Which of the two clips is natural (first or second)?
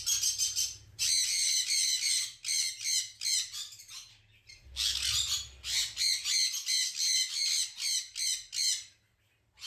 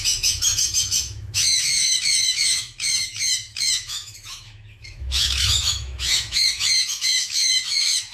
first